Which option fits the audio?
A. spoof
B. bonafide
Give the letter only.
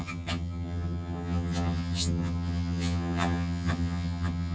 A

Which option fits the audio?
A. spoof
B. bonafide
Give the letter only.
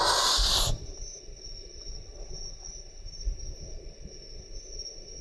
B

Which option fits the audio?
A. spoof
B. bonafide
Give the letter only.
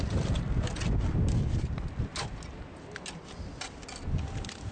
B